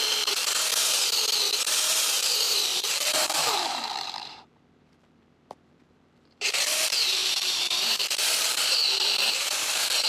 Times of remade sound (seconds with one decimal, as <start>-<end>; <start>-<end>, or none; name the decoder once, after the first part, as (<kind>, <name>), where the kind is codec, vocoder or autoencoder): 0.0-0.7 (vocoder, BigVGAN v2); 1.7-10.1